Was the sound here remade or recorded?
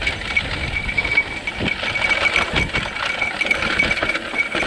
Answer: recorded